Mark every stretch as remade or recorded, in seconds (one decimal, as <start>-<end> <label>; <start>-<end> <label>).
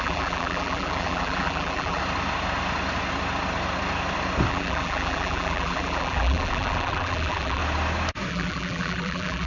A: 0.0-2.0 remade; 2.0-4.5 recorded; 4.5-7.6 remade; 7.6-8.3 recorded; 8.3-9.5 remade